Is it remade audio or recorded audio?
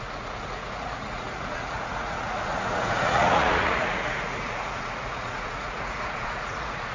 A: remade